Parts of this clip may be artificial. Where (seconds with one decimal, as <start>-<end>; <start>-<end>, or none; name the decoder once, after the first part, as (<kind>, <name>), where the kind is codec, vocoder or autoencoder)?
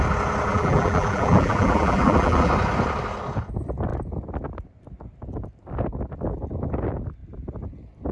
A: 0.5-2.5 (vocoder, BigVGAN v2)